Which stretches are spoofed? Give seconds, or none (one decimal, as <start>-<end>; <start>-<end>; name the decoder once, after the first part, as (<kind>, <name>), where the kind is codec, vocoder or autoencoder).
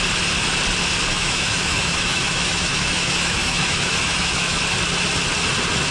1.1-4.6 (autoencoder, DAC-VAE)